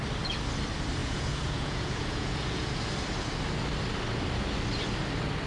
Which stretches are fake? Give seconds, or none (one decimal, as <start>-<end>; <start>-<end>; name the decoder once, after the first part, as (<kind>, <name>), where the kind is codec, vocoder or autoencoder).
1.0-2.8 (vocoder, Vocos)